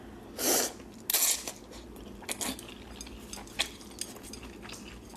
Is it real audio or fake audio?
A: real